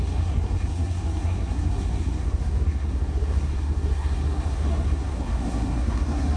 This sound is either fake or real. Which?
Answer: fake